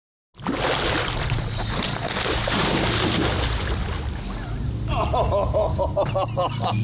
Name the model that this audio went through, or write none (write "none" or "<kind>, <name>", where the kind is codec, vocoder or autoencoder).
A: none